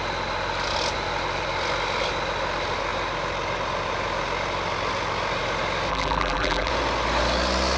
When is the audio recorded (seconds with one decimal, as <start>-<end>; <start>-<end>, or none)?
0.0-5.9; 6.7-7.8